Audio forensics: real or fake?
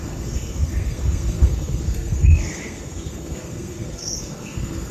fake